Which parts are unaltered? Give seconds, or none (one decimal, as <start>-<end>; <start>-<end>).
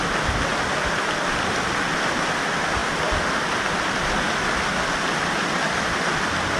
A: 0.0-6.6